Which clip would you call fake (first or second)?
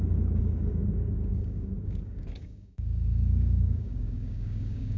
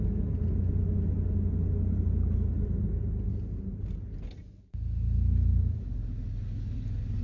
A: first